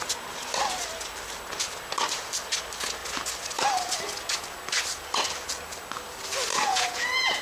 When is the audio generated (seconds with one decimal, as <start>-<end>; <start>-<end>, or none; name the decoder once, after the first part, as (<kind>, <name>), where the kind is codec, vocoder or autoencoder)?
6.5-7.4 (vocoder, Vocos)